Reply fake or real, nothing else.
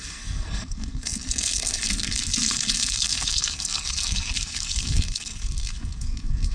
fake